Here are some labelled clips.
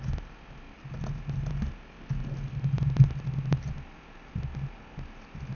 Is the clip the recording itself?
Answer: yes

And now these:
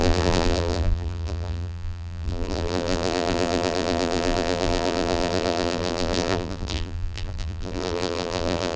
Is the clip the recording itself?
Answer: no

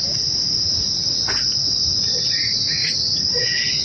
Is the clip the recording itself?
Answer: no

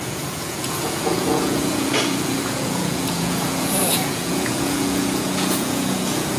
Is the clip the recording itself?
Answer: no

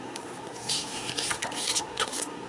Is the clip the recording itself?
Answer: no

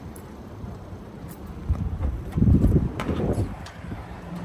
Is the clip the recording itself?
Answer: no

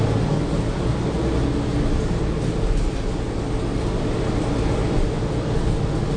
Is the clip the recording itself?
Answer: yes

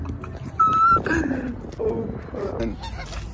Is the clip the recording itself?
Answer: yes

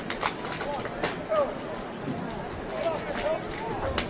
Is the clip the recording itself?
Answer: yes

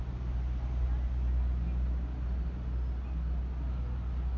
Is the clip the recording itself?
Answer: yes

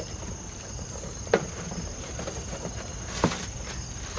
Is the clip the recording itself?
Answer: no